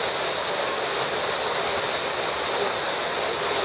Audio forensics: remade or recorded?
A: recorded